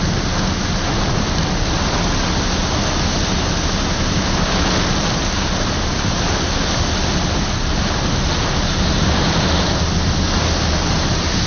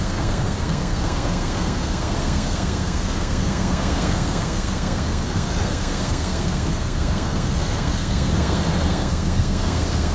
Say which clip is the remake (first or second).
second